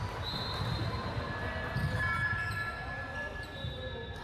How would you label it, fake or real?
real